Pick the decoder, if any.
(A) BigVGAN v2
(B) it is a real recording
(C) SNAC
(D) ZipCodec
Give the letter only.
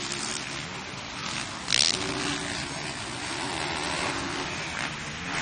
B